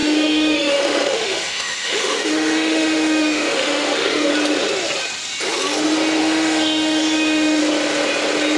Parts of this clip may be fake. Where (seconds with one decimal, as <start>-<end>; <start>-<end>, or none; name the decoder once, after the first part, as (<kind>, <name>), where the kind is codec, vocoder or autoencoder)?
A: 0.0-4.3 (autoencoder, DAC-VAE); 6.2-7.6